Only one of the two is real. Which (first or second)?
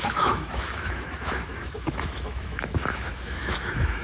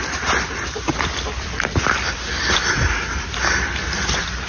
second